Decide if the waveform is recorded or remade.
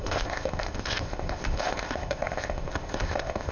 remade